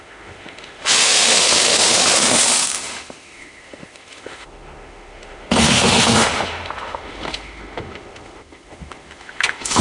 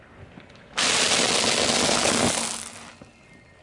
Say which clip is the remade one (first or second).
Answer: first